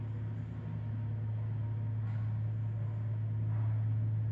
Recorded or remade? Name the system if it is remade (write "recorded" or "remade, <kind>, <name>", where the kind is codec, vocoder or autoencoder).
recorded